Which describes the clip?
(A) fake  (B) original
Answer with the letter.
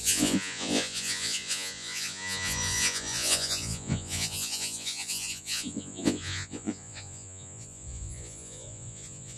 A